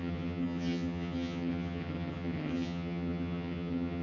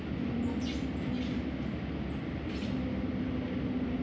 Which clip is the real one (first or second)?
second